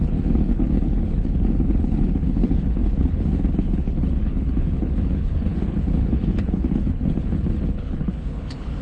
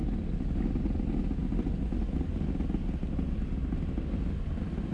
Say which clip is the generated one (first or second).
first